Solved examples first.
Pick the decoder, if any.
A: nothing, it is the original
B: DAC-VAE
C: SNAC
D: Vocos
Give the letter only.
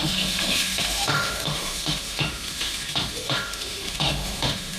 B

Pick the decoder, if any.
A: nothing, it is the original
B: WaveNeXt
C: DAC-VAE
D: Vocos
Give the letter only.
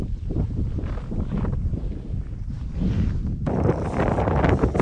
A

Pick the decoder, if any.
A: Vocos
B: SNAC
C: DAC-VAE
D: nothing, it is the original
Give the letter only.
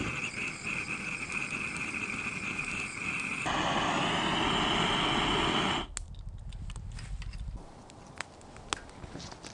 D